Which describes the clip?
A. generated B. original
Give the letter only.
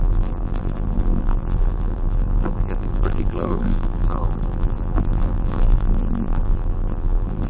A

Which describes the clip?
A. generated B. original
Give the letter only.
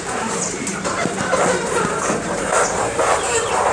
A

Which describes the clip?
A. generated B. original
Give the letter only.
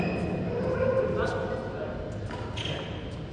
B